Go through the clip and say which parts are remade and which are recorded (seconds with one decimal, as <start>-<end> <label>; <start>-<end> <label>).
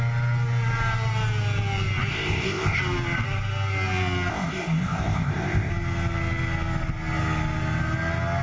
0.0-2.1 recorded; 2.1-2.8 remade; 2.8-4.3 recorded; 4.3-5.7 remade; 5.7-8.4 recorded